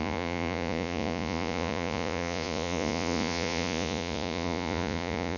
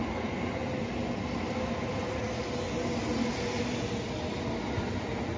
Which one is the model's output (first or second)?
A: first